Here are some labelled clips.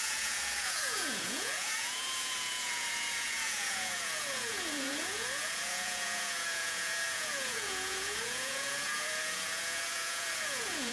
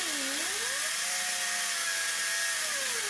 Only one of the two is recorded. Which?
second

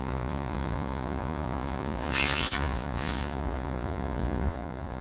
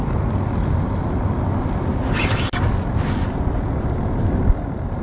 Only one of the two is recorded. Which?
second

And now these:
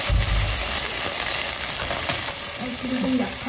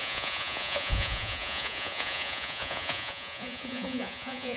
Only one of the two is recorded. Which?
first